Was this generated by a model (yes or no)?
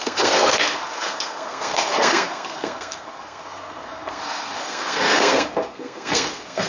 yes